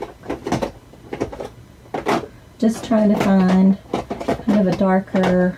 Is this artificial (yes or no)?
no